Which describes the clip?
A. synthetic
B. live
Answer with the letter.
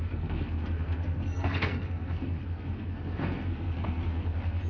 A